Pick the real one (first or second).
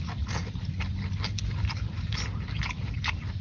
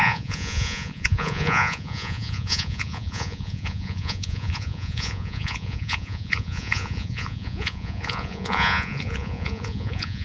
first